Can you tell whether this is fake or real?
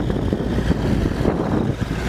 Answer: real